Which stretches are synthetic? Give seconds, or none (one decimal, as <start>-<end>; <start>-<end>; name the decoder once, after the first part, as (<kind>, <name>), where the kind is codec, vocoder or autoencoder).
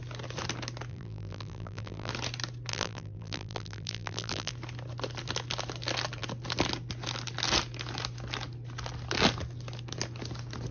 0.9-2.1 (vocoder, BigVGAN v2); 2.7-4.5